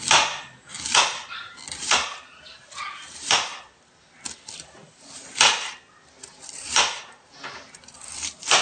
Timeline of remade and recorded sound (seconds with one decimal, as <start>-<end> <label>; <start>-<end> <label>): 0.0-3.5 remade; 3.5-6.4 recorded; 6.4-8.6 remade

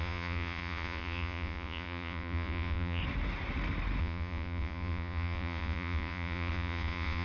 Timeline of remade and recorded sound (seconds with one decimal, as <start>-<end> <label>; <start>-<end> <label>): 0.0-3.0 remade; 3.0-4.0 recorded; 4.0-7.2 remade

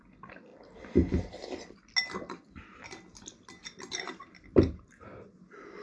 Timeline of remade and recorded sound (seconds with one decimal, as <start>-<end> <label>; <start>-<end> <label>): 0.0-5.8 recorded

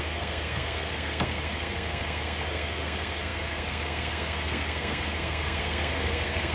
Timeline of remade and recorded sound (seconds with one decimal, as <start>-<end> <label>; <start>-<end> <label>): 0.0-6.5 remade

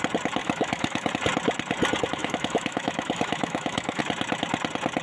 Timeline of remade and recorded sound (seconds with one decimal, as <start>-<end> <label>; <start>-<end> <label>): 0.0-0.4 recorded; 0.4-1.1 remade; 1.1-2.2 recorded; 2.2-4.0 remade; 4.0-5.0 recorded